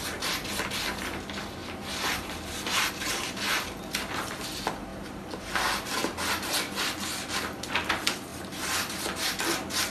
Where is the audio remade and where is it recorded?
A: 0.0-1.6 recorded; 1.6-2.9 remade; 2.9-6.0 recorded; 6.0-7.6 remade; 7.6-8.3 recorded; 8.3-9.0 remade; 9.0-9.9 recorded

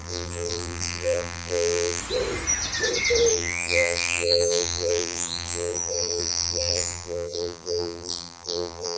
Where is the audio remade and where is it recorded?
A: 0.0-2.0 remade; 2.0-3.3 recorded; 3.3-9.0 remade